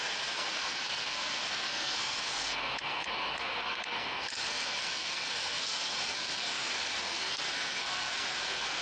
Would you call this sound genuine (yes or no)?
no